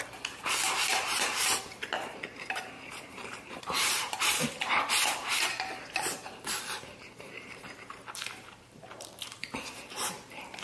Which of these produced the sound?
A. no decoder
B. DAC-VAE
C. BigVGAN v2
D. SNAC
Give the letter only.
C